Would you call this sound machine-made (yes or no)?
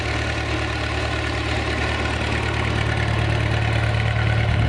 no